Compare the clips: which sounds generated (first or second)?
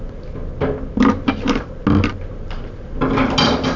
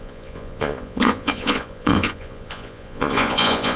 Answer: second